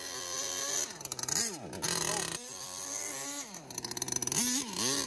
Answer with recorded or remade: recorded